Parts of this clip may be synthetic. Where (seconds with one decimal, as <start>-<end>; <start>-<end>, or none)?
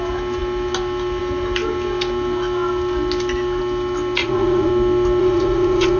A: 4.2-4.7; 5.2-6.0